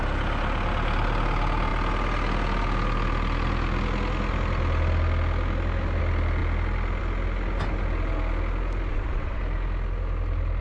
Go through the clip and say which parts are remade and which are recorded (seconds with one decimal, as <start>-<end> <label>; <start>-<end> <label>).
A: 0.0-8.9 recorded; 8.9-9.4 remade; 9.4-10.6 recorded